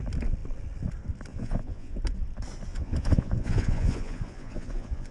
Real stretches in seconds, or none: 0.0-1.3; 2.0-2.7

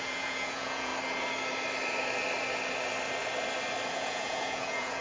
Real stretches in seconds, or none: 0.9-3.9

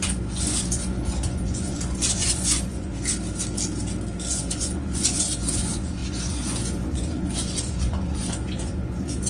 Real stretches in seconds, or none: 3.1-4.3

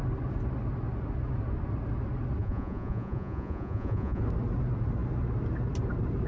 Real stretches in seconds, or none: 0.0-2.4; 4.2-6.3